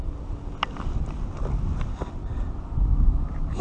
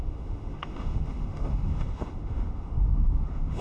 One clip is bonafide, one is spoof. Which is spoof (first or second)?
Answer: second